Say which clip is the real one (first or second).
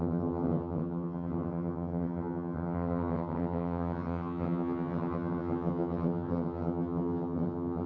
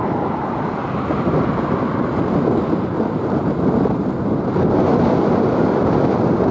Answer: second